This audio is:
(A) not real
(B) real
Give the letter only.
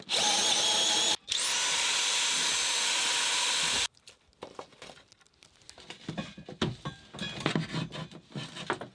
B